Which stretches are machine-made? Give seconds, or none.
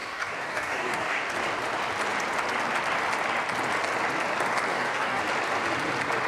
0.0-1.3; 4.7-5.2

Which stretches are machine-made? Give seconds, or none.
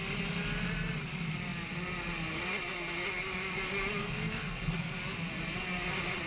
4.0-5.0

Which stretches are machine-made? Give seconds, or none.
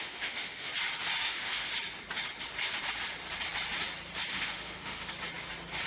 0.0-0.7; 1.2-1.7; 4.3-5.1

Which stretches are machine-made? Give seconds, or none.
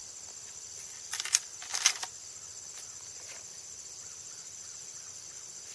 0.6-1.7; 2.6-5.7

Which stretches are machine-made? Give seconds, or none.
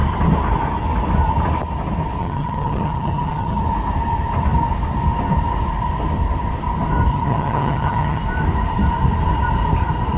2.2-3.6; 7.1-8.2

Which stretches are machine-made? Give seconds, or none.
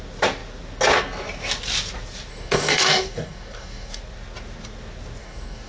2.3-4.0; 5.2-5.7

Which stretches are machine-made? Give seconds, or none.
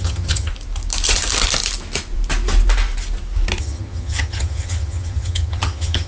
0.0-0.5; 3.6-6.1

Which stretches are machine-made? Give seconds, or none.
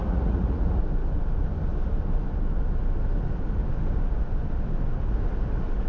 0.0-0.8